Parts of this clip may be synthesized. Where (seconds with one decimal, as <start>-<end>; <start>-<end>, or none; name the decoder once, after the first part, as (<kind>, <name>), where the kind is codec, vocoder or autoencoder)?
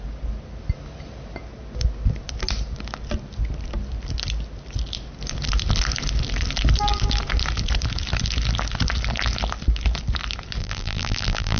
10.6-11.6 (vocoder, BigVGAN v2)